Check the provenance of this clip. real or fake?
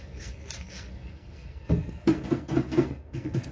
fake